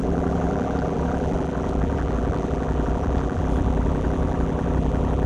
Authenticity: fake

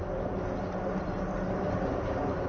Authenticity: real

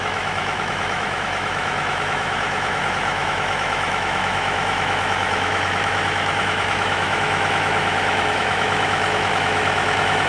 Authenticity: fake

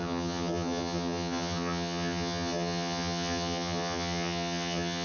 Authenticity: fake